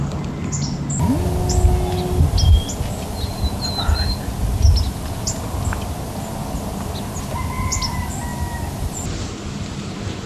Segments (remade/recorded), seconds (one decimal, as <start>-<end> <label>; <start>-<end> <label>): 0.0-8.3 recorded; 8.3-9.2 remade; 9.2-10.3 recorded